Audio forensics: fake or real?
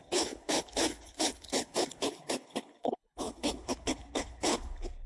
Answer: fake